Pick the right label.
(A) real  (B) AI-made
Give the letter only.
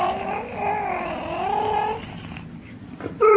A